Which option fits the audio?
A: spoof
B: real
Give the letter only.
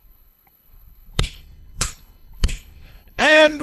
A